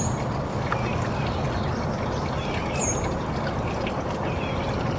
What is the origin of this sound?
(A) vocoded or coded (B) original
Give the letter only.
B